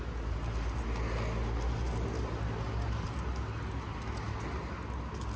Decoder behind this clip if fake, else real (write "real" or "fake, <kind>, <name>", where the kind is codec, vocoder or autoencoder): real